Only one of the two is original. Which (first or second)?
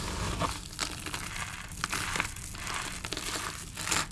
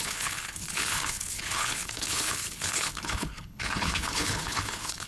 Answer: first